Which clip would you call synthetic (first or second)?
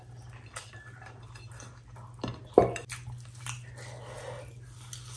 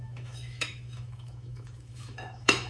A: second